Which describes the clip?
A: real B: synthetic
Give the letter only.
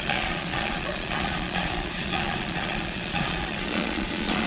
B